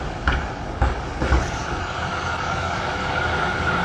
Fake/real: fake